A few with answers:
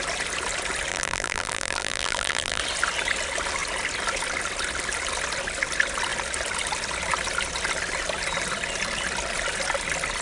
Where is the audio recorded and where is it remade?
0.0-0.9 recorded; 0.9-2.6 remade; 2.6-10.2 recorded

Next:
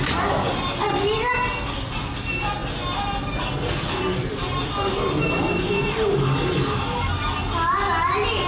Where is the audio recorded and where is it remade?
0.0-8.5 recorded

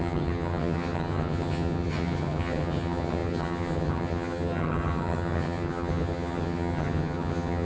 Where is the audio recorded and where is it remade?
0.0-7.6 remade

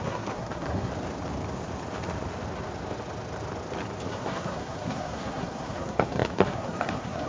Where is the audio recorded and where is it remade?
0.0-0.9 remade; 0.9-4.1 recorded; 4.1-7.3 remade